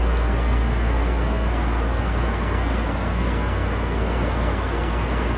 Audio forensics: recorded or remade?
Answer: remade